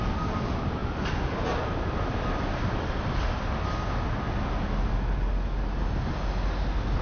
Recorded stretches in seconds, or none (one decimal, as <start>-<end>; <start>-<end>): 0.0-7.0